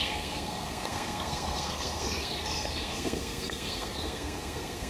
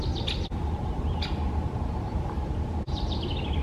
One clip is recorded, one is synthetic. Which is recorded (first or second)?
second